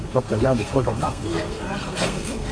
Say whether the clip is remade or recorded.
remade